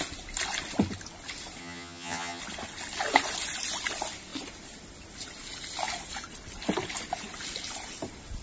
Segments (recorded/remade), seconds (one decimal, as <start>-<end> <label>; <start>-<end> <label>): 0.0-1.6 recorded; 1.6-2.4 remade; 2.4-8.4 recorded